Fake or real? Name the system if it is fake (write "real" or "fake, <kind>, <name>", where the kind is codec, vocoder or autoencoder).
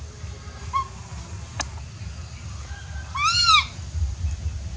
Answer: real